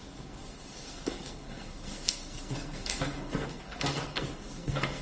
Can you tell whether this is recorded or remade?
remade